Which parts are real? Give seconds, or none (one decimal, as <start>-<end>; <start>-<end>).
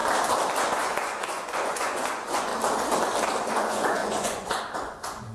0.0-0.6; 2.5-3.5